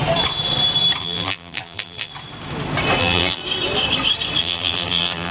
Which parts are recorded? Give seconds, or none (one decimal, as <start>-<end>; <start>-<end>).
0.0-1.0; 2.1-3.0; 3.4-4.4